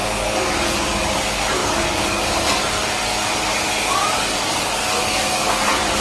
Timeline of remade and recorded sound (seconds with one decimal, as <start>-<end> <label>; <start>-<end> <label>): 0.0-6.0 remade